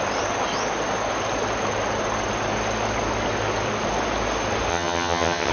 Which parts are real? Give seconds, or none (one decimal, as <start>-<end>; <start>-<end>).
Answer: 0.0-4.7